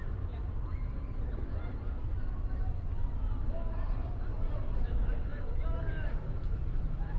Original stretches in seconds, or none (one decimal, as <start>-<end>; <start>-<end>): 0.0-5.3